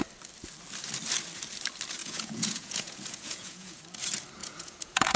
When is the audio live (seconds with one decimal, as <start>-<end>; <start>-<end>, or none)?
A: 0.0-2.0; 3.8-4.4